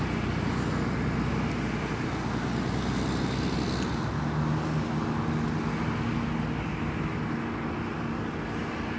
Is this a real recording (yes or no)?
yes